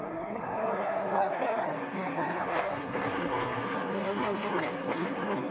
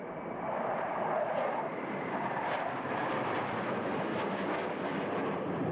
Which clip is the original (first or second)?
second